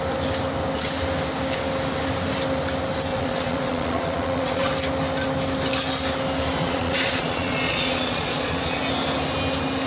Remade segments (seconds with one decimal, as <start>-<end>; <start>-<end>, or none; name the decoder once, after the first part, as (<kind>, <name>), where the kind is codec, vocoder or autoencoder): 3.1-4.7 (vocoder, Vocos); 6.6-8.8